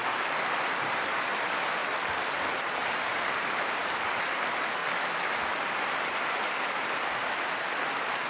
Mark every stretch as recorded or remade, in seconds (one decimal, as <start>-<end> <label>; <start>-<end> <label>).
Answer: 0.0-1.8 recorded; 1.8-2.4 remade; 2.4-4.8 recorded; 4.8-7.8 remade; 7.8-8.3 recorded